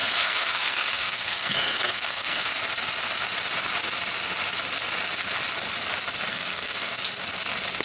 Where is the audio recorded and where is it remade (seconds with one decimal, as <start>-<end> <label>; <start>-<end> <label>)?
0.0-2.5 remade; 2.5-6.3 recorded; 6.3-7.0 remade; 7.0-7.8 recorded